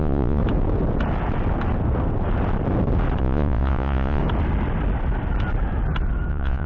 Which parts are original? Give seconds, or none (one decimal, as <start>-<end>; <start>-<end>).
0.4-3.2; 4.2-6.3